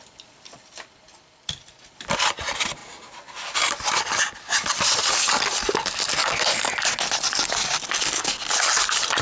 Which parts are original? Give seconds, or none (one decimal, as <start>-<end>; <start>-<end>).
0.0-9.2